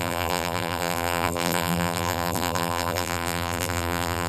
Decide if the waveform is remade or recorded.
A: remade